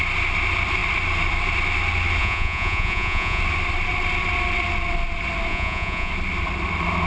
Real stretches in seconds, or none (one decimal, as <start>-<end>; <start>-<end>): 0.0-2.2; 3.4-5.5; 6.1-7.1